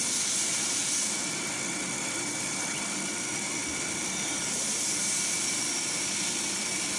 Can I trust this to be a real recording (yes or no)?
no